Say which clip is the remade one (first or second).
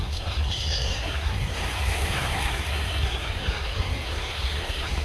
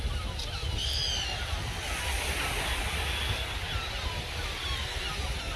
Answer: first